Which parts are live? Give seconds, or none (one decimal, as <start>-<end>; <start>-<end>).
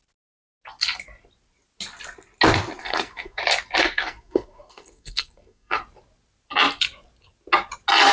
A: 0.0-2.8; 3.4-3.8; 5.8-8.1